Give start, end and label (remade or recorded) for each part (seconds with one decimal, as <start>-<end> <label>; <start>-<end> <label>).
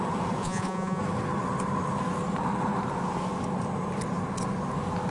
0.0-0.4 recorded; 0.4-1.0 remade; 1.0-5.1 recorded